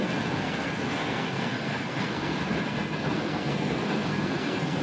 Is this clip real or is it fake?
fake